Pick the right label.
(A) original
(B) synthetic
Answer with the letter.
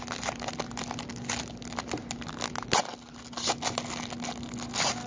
A